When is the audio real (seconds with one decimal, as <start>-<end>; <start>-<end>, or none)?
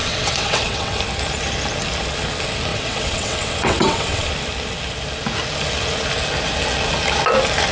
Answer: 1.0-2.7; 4.3-7.7